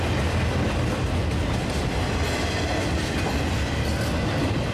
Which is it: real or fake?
real